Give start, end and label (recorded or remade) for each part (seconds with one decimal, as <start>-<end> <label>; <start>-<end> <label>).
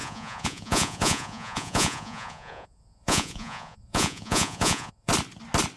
0.0-5.1 remade; 5.1-5.8 recorded